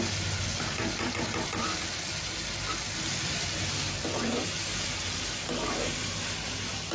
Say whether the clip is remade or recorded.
recorded